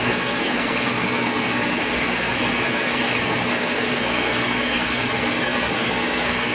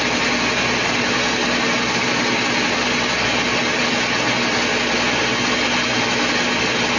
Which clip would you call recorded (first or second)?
second